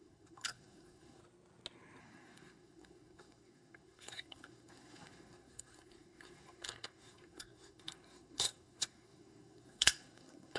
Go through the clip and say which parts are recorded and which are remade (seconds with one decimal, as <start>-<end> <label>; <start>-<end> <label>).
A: 0.0-1.2 remade; 1.2-2.0 recorded; 2.0-10.6 remade